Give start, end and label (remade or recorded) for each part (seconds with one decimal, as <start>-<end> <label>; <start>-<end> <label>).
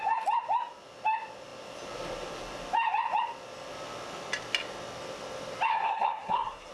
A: 0.0-5.7 recorded; 5.7-6.7 remade